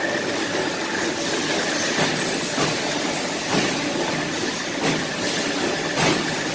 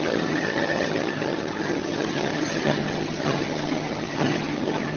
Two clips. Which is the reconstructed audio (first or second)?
second